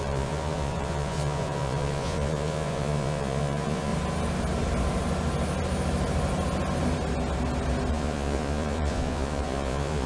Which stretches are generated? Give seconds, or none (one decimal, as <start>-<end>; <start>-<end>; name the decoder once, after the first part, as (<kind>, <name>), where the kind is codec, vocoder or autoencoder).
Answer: 0.0-3.9 (vocoder, Vocos); 7.9-10.1